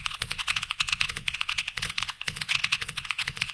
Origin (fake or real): fake